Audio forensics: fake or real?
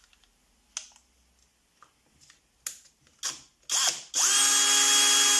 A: real